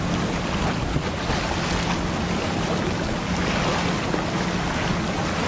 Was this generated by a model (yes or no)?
no